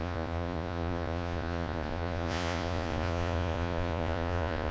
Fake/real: fake